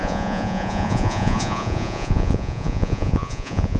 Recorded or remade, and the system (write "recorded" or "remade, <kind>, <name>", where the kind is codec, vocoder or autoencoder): remade, vocoder, Vocos